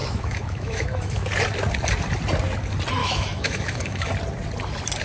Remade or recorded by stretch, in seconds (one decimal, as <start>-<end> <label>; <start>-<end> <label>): 0.0-1.3 remade; 1.3-3.0 recorded; 3.0-4.1 remade; 4.1-5.0 recorded